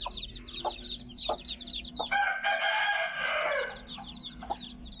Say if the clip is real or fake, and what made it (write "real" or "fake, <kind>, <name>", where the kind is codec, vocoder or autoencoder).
real